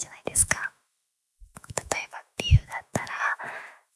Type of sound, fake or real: fake